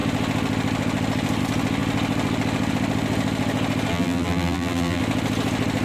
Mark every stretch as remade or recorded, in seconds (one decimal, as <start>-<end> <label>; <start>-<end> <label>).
0.0-3.9 recorded; 3.9-5.0 remade; 5.0-5.8 recorded